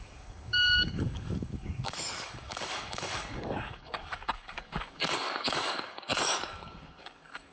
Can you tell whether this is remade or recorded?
remade